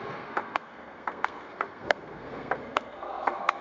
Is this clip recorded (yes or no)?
no